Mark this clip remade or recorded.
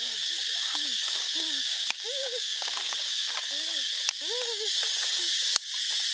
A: remade